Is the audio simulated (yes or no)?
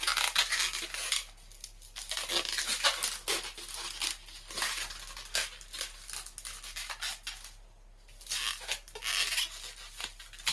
no